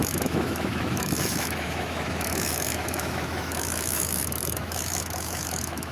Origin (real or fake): fake